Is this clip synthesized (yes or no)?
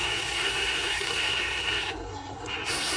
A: yes